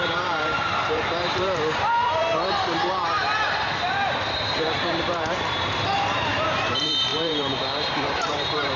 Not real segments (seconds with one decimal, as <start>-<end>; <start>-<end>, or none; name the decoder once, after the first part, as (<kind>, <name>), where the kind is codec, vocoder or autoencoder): 0.0-8.8 (vocoder, BigVGAN v2)